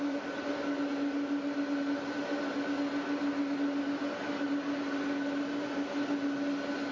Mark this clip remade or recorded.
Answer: recorded